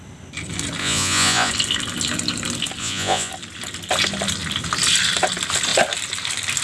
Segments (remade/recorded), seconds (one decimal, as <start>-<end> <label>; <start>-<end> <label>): 0.0-0.8 recorded; 0.8-1.5 remade; 1.5-2.8 recorded; 2.8-3.3 remade; 3.3-6.6 recorded